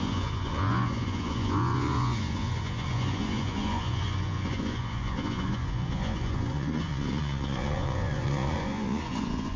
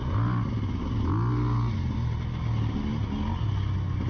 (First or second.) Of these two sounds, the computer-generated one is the first